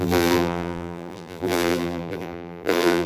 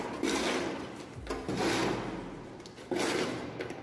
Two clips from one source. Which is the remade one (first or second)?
first